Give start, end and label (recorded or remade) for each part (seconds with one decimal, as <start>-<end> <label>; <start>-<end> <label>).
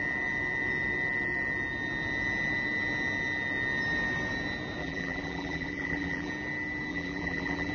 0.0-4.8 recorded; 4.8-6.3 remade; 6.3-6.9 recorded; 6.9-7.7 remade